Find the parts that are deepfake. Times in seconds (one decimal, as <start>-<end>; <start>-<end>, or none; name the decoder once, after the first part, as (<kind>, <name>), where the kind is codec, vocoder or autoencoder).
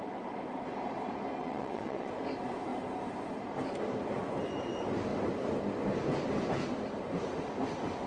1.4-2.1 (vocoder, WaveNeXt)